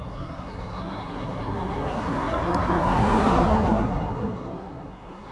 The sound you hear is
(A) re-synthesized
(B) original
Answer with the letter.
A